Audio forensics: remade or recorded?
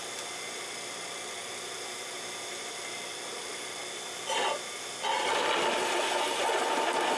recorded